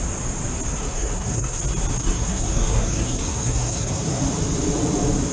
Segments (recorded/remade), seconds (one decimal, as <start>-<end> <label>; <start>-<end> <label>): 0.0-0.7 recorded; 0.7-1.6 remade; 1.6-2.0 recorded; 2.0-4.2 remade; 4.2-5.3 recorded